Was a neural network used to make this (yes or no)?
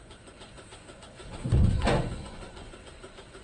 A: yes